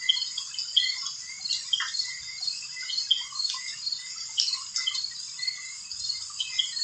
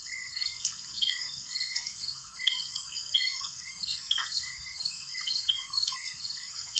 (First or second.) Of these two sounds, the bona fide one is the first